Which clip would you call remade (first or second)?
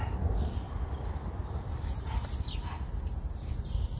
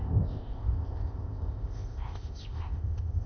second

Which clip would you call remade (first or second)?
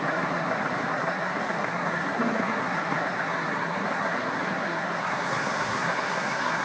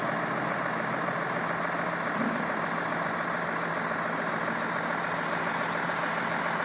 first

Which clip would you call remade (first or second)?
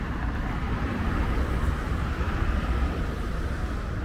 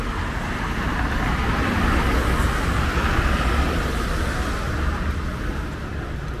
first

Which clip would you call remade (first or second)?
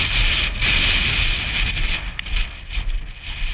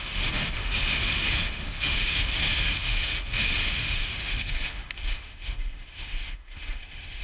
second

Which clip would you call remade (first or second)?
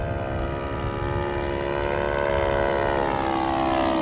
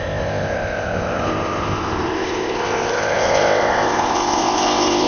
second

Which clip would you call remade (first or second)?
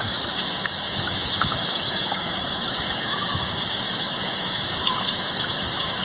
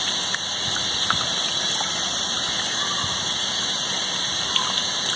first